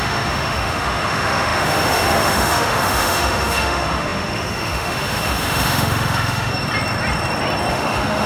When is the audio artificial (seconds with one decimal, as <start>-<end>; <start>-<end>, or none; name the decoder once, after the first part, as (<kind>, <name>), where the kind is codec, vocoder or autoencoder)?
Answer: 0.0-6.5 (autoencoder, DAC-VAE); 7.7-8.3